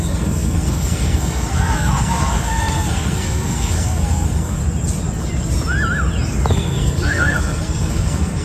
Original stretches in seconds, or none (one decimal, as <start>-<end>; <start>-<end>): 4.6-6.5